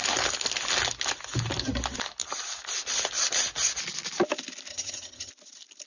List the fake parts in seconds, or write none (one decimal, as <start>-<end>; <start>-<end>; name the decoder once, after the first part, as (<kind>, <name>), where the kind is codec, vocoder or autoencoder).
4.7-5.3 (vocoder, HiFi-GAN)